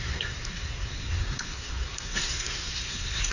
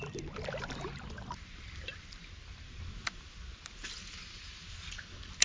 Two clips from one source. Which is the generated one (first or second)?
first